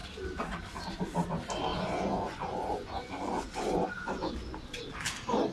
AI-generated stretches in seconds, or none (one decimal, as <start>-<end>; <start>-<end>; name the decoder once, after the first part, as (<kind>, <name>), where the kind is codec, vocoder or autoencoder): 1.7-4.3 (vocoder, Vocos)